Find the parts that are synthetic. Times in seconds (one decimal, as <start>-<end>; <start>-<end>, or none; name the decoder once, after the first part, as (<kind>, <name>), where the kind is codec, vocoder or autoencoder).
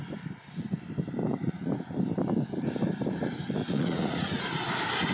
1.2-1.7 (vocoder, Vocos); 3.6-4.4